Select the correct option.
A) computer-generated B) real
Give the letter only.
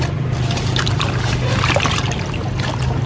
B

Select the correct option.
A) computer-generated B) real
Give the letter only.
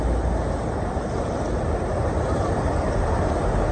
B